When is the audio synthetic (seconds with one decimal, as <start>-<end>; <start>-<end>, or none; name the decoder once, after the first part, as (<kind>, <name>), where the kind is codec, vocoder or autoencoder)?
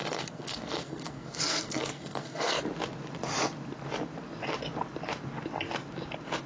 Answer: 0.0-2.6 (codec, SNAC)